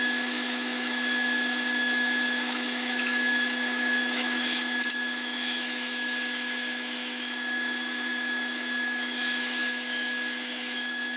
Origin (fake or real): fake